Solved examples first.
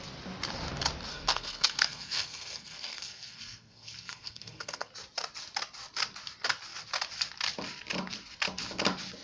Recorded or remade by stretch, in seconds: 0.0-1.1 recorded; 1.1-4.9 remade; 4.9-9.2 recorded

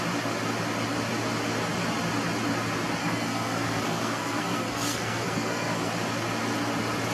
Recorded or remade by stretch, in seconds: 0.0-3.0 recorded; 3.0-5.9 remade; 5.9-7.1 recorded

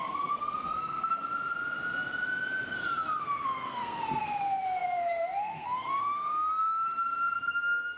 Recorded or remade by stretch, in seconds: 0.0-1.2 remade; 1.2-3.2 recorded; 3.2-8.0 remade

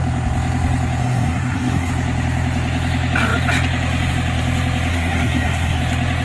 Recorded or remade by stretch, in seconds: 0.0-1.0 recorded; 1.0-1.9 remade; 1.9-4.9 recorded; 4.9-5.8 remade; 5.8-6.2 recorded

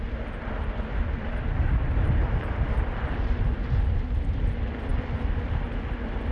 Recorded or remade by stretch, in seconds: 0.0-6.3 recorded